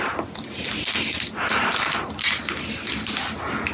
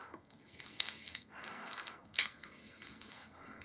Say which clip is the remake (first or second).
second